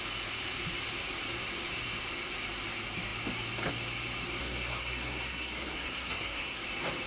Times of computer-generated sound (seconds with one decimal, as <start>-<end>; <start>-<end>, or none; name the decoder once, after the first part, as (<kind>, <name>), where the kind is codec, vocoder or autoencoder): 4.4-6.6 (codec, SNAC)